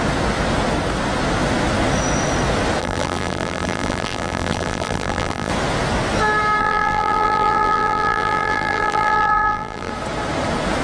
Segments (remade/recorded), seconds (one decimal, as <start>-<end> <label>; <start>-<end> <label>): 0.0-2.8 recorded; 2.8-5.5 remade; 5.5-6.6 recorded; 6.6-9.9 remade; 9.9-10.8 recorded